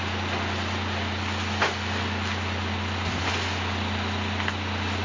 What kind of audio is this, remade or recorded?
recorded